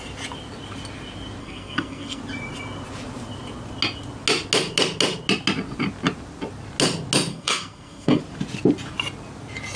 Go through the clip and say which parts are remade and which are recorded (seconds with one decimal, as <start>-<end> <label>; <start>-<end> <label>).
0.0-1.4 recorded; 1.4-2.2 remade; 2.2-7.3 recorded; 7.3-8.2 remade; 8.2-9.8 recorded